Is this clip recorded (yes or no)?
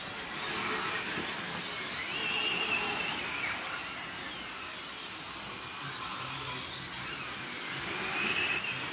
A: yes